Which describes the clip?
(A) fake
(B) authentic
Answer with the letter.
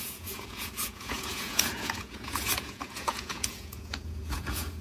A